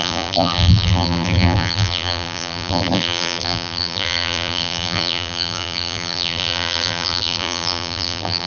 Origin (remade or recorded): remade